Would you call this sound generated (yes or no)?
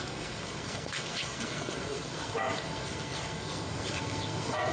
yes